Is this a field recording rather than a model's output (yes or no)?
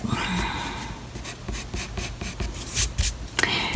yes